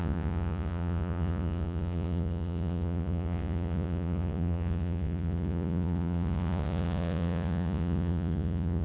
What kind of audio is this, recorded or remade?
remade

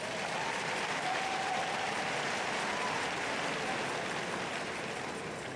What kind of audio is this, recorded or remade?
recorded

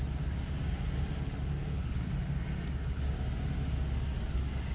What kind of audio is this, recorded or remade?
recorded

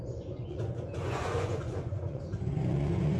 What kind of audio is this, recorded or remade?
remade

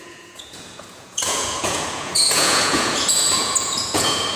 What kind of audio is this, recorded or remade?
remade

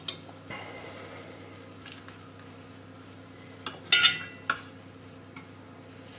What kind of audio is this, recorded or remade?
recorded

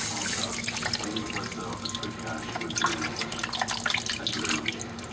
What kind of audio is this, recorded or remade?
recorded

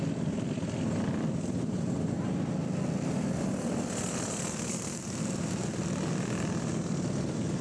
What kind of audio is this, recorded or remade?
recorded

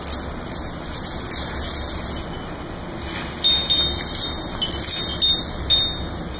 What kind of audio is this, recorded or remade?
recorded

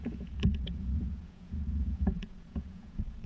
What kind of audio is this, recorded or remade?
remade